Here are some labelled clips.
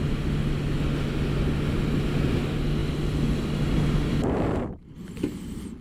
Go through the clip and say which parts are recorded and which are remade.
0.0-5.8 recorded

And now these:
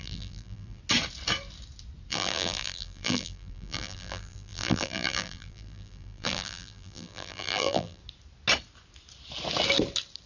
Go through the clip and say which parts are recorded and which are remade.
0.0-0.8 remade; 0.8-2.1 recorded; 2.1-8.0 remade; 8.0-10.3 recorded

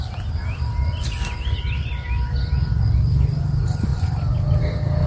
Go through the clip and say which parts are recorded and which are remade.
0.0-3.9 recorded; 3.9-4.6 remade; 4.6-5.1 recorded

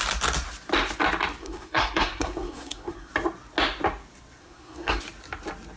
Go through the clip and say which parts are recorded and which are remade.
0.0-1.4 recorded; 1.4-3.1 remade; 3.1-4.4 recorded; 4.4-5.0 remade; 5.0-5.8 recorded

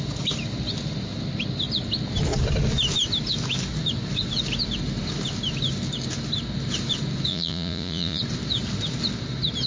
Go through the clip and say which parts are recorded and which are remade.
0.0-7.3 recorded; 7.3-8.2 remade; 8.2-9.7 recorded

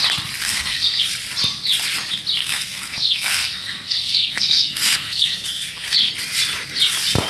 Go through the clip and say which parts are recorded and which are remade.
0.0-0.4 recorded; 0.4-1.1 remade; 1.1-2.4 recorded; 2.4-6.1 remade; 6.1-7.3 recorded